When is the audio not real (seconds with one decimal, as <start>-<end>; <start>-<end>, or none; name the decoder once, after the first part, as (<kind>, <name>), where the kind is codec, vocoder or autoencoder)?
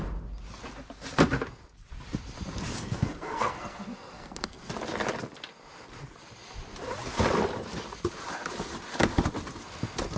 2.7-4.7 (codec, SNAC)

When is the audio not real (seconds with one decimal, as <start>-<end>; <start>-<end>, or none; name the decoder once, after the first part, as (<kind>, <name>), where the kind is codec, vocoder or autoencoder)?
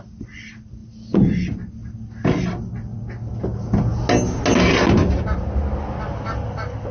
none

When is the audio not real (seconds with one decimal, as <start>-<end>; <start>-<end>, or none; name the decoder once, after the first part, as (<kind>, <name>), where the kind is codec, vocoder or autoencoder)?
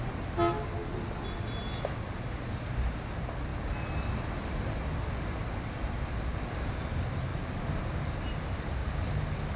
3.5-4.2 (vocoder, BigVGAN v2); 5.4-6.6; 7.3-8.0; 8.8-9.6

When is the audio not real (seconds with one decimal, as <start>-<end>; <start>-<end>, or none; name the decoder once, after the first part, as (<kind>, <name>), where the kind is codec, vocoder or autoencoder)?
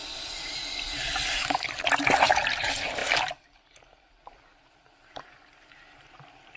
2.2-6.6 (vocoder, BigVGAN v2)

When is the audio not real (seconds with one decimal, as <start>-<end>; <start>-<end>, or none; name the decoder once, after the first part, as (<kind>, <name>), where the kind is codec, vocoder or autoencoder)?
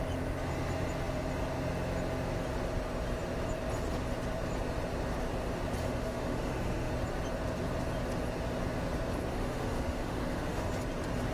5.8-6.9 (autoencoder, DAC-VAE); 9.3-10.7